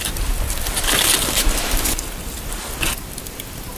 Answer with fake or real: fake